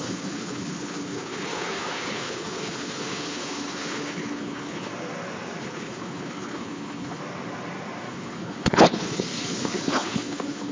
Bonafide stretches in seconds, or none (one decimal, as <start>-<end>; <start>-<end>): 4.9-5.6; 7.2-8.1